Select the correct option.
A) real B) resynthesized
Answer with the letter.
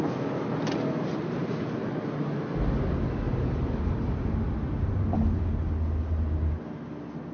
A